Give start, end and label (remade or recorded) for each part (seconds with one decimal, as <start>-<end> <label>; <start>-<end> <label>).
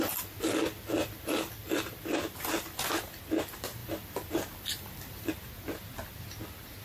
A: 0.0-1.0 recorded; 1.0-3.2 remade; 3.2-3.8 recorded; 3.8-5.3 remade; 5.3-6.8 recorded